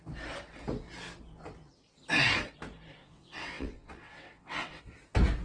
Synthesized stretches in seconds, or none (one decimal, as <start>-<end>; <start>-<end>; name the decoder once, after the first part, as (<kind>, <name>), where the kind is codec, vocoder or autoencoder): 3.0-4.8 (vocoder, WaveNeXt)